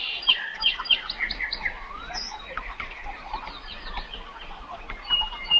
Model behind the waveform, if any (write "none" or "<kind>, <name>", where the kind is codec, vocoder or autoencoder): vocoder, BigVGAN v2